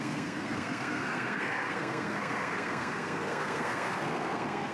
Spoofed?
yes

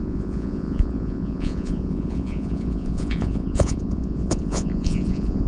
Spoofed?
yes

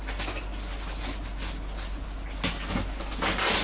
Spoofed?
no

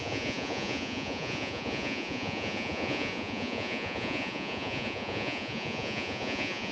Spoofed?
yes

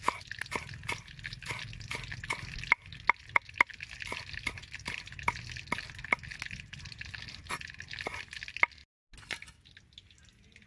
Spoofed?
no